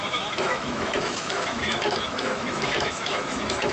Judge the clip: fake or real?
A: fake